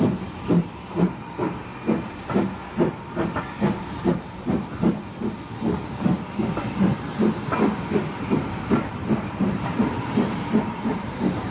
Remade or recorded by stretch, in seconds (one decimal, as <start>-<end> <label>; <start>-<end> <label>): 0.0-1.7 remade; 1.7-2.9 recorded; 2.9-3.3 remade; 3.3-7.8 recorded; 7.8-11.5 remade